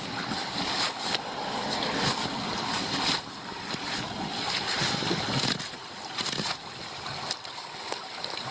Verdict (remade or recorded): recorded